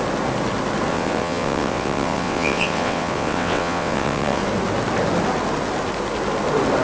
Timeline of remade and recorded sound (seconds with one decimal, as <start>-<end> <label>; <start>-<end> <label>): 0.0-0.9 recorded; 0.9-4.4 remade; 4.4-6.8 recorded